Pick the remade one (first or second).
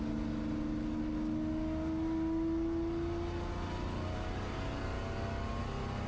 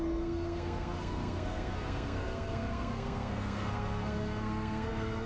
second